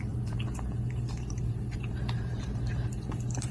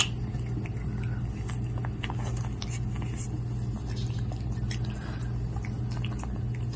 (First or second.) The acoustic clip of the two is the second